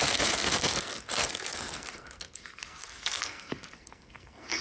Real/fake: fake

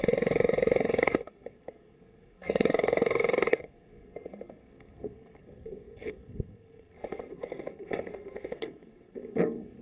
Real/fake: fake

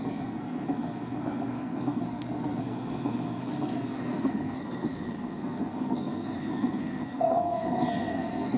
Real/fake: fake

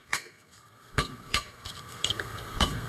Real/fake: fake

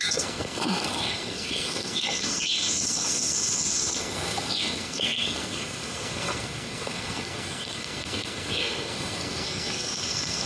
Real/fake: fake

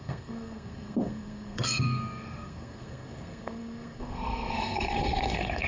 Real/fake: fake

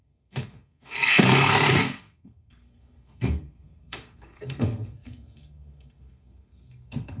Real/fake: fake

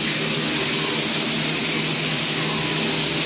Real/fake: real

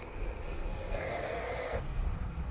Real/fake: fake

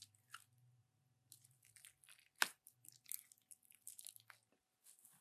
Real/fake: real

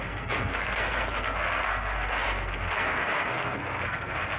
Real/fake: fake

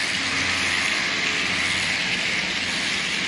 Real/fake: real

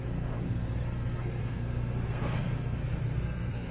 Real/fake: fake